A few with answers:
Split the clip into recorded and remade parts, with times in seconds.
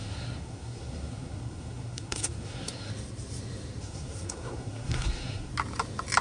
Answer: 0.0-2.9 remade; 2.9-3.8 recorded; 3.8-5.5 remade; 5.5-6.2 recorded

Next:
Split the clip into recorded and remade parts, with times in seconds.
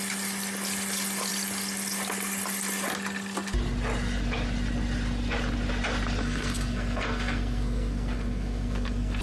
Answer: 0.0-6.2 recorded; 6.2-9.2 remade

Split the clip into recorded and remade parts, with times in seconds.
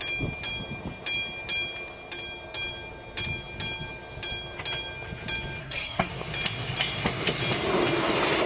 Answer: 0.0-5.6 recorded; 5.6-6.1 remade; 6.1-8.5 recorded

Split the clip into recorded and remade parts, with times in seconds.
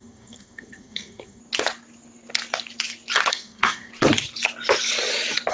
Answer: 0.0-1.4 remade; 1.4-3.3 recorded; 3.3-3.9 remade; 3.9-5.5 recorded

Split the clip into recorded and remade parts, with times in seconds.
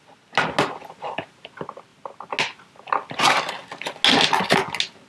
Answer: 0.0-5.1 recorded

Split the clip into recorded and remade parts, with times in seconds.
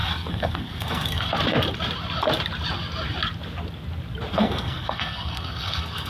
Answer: 0.0-1.3 remade; 1.3-4.3 recorded; 4.3-6.1 remade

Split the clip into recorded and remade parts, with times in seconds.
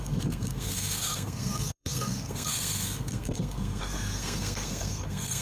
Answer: 0.0-5.4 remade